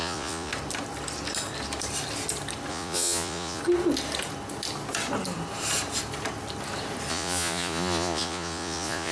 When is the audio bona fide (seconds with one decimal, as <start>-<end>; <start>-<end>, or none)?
0.5-2.7; 3.6-7.1